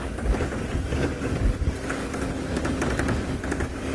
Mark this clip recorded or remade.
remade